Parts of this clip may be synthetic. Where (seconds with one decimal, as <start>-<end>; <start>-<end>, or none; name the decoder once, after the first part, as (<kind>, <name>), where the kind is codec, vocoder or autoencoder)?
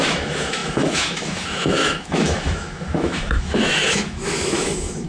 0.0-5.1 (autoencoder, DAC-VAE)